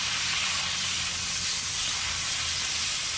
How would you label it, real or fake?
fake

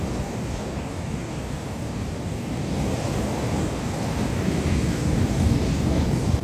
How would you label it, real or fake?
fake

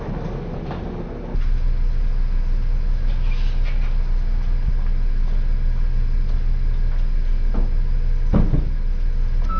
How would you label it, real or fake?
real